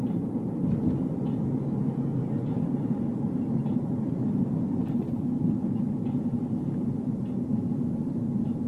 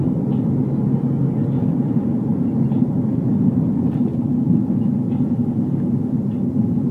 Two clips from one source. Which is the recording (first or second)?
second